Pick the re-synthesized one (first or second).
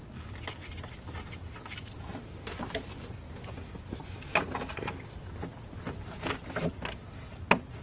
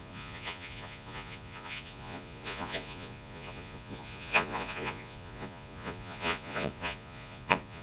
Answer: second